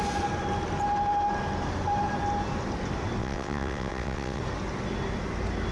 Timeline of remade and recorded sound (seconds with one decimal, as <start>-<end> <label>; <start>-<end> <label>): 0.0-3.2 recorded; 3.2-4.4 remade; 4.4-5.7 recorded